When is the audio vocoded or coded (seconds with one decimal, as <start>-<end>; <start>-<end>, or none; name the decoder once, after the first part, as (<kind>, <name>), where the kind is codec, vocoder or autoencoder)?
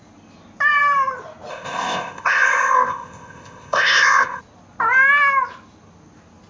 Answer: 1.5-4.4 (codec, ZipCodec)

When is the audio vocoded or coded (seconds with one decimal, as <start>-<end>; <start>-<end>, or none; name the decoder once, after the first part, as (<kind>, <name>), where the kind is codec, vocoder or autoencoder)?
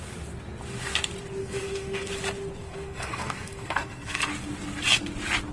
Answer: 1.4-2.1 (codec, SNAC); 2.6-4.3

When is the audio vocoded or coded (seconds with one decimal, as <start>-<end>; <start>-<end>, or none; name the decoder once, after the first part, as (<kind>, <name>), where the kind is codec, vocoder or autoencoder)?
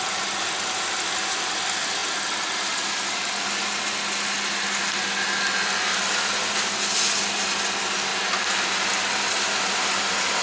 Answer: none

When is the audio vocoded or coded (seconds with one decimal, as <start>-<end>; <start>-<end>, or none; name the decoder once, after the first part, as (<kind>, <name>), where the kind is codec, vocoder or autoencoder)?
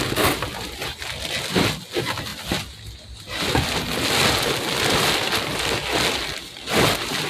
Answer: none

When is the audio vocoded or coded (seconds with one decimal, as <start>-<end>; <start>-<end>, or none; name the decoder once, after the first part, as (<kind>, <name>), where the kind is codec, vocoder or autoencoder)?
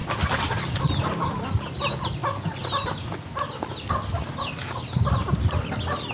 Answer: none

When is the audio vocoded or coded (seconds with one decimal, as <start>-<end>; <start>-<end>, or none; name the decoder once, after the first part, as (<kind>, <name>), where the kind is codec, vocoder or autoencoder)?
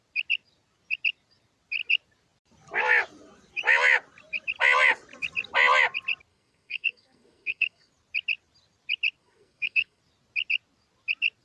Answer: 6.3-7.9 (codec, SNAC); 9.2-10.0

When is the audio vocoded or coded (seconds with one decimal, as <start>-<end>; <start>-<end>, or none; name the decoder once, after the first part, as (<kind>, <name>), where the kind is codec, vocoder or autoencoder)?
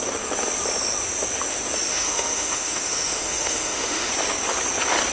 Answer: 1.9-4.1 (autoencoder, DAC-VAE)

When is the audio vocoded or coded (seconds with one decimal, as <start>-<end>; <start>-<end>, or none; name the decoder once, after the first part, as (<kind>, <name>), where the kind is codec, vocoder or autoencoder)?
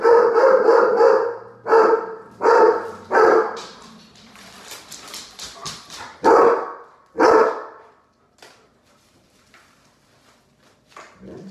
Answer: 0.0-0.7 (vocoder, BigVGAN v2); 1.9-11.5